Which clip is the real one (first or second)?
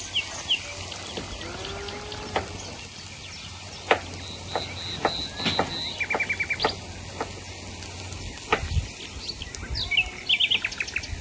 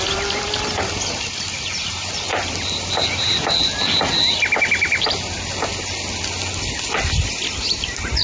first